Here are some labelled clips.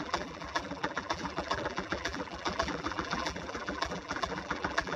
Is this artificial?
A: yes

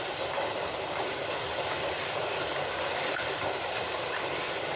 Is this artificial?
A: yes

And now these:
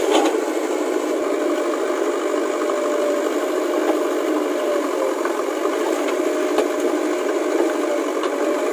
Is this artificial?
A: no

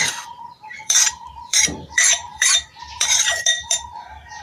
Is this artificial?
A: yes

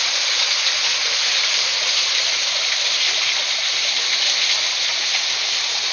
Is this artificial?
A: no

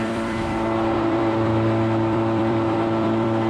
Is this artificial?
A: yes